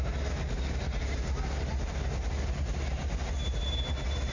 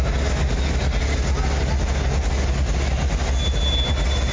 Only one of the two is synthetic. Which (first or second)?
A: first